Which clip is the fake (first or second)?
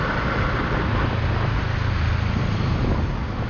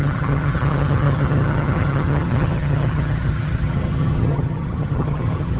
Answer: second